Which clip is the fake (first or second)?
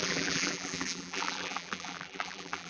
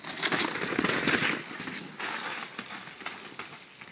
first